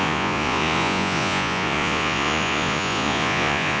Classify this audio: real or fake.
fake